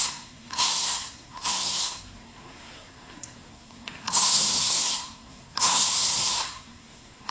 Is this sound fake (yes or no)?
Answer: yes